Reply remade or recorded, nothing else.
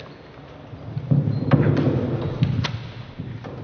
recorded